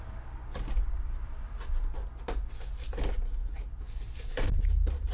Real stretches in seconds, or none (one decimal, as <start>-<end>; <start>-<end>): 0.5-1.1; 1.9-3.2

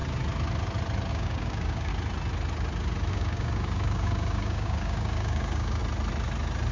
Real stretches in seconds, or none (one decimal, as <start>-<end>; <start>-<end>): 0.0-1.1; 1.9-3.1; 5.8-6.7

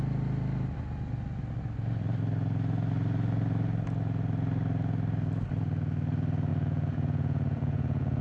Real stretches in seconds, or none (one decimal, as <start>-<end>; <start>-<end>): 0.0-6.5

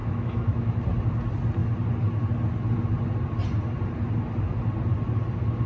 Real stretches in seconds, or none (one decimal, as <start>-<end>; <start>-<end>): 0.8-5.7

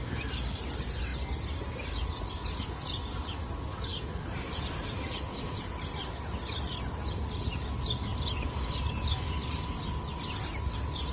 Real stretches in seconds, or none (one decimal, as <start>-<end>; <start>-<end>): 0.0-11.1

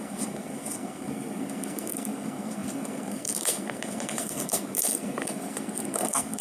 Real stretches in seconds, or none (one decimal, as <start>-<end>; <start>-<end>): none

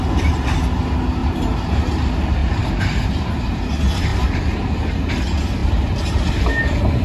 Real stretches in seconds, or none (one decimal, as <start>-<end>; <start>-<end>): 0.0-1.2; 1.8-2.4; 3.6-4.1; 5.1-7.0

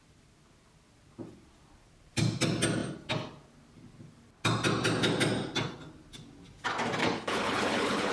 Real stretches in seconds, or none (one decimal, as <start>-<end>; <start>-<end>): 0.0-7.0